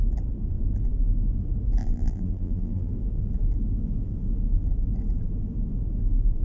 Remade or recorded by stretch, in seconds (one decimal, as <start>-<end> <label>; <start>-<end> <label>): 0.0-1.8 recorded; 1.8-2.9 remade; 2.9-6.4 recorded

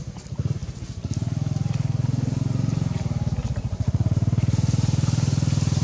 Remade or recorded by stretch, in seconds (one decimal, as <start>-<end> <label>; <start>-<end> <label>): 0.0-0.6 remade; 0.6-3.5 recorded; 3.5-5.8 remade

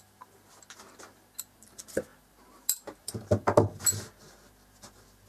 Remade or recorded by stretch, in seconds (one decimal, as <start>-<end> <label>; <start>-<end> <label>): 0.0-5.3 recorded

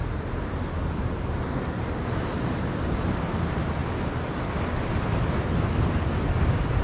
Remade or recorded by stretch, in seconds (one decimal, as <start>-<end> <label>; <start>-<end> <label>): 0.0-1.2 remade; 1.2-6.8 recorded

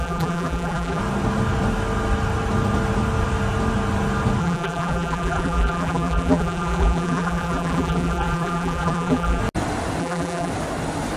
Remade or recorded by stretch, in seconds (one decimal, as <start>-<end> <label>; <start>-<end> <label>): 0.0-1.0 remade; 1.0-4.4 recorded; 4.4-9.4 remade; 9.4-10.0 recorded; 10.0-10.5 remade; 10.5-11.2 recorded

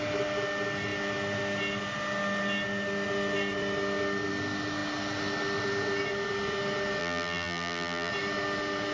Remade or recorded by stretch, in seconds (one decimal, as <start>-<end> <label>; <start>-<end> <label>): 0.0-7.0 recorded; 7.0-8.1 remade; 8.1-8.9 recorded

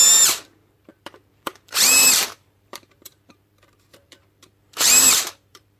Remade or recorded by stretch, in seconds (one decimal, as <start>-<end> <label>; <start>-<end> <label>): 0.0-5.8 remade